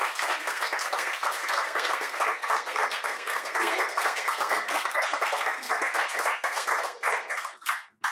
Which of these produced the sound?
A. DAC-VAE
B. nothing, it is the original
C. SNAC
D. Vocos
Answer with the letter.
C